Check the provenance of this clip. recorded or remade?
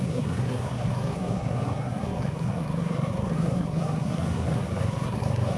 remade